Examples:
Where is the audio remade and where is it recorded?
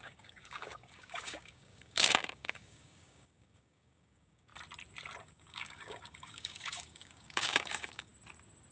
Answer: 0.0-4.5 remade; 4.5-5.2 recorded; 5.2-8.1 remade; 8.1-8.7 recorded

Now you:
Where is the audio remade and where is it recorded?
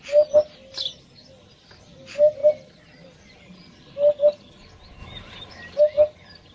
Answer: 0.0-6.5 recorded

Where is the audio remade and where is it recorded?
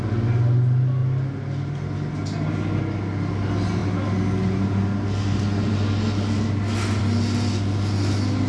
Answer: 0.0-8.5 recorded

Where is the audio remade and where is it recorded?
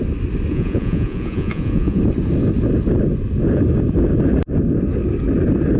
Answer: 0.0-0.5 recorded; 0.5-2.0 remade; 2.0-5.8 recorded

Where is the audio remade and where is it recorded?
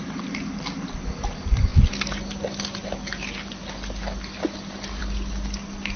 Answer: 0.0-6.0 recorded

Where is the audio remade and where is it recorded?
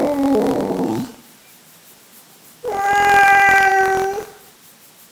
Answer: 0.0-5.1 recorded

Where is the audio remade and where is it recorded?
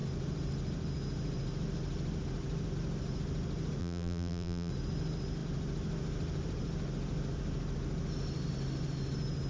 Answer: 0.0-3.8 recorded; 3.8-4.7 remade; 4.7-9.5 recorded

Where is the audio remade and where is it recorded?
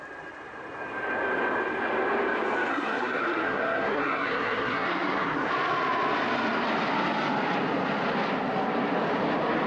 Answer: 0.0-2.7 recorded; 2.7-5.5 remade; 5.5-9.7 recorded